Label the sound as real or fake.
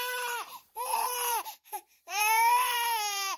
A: fake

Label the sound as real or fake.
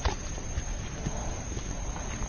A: real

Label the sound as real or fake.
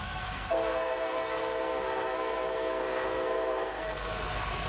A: fake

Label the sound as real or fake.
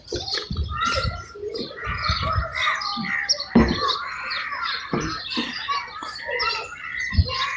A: real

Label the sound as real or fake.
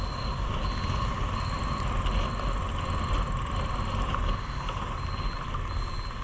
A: real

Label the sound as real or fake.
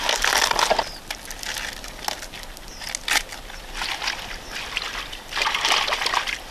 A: real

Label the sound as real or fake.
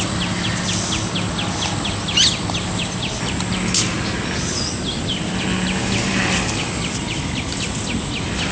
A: real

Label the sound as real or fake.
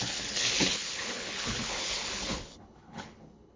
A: fake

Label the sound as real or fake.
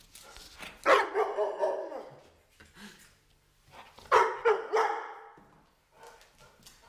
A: real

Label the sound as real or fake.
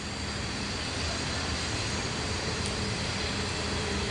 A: real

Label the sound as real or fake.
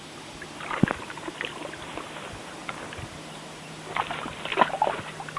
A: real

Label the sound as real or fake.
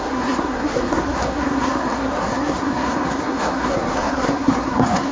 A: fake